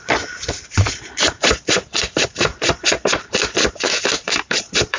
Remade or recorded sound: remade